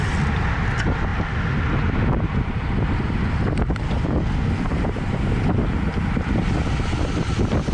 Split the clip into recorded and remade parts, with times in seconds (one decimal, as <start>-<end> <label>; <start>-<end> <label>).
0.0-1.1 remade; 1.1-1.8 recorded; 1.8-7.7 remade